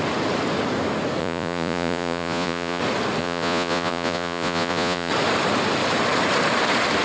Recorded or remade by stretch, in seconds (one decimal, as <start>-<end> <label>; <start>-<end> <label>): 0.0-1.2 recorded; 1.2-2.8 remade; 2.8-3.2 recorded; 3.2-5.1 remade; 5.1-7.0 recorded